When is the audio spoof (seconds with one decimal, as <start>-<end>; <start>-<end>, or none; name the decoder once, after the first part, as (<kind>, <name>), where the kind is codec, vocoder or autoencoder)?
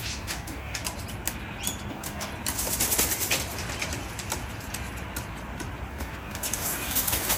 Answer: 0.0-0.8 (codec, DAC); 1.9-2.3; 5.9-7.4